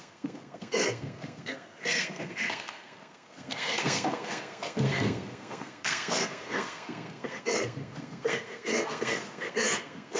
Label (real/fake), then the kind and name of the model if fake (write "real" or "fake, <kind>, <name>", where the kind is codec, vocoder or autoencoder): fake, codec, SNAC